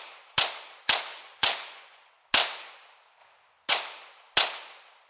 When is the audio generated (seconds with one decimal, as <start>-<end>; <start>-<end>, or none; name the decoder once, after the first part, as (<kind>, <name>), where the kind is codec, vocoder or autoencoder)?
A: 1.1-2.1 (vocoder, Vocos)